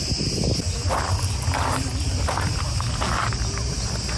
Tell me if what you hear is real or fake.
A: real